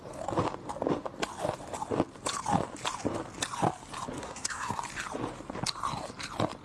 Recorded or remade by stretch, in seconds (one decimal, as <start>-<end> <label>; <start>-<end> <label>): 0.0-4.2 recorded; 4.2-4.8 remade; 4.8-6.6 recorded